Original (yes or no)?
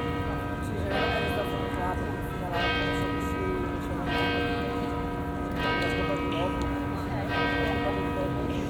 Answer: yes